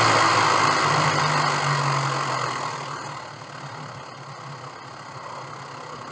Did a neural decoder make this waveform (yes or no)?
no